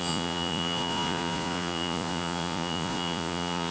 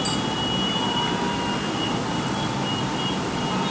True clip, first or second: second